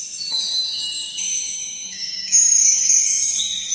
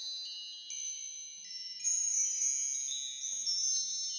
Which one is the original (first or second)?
second